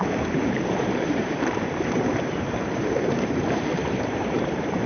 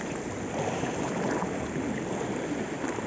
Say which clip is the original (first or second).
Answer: second